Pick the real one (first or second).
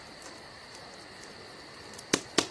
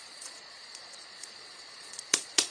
first